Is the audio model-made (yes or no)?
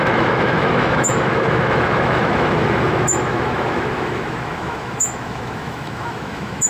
yes